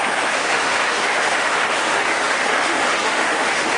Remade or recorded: remade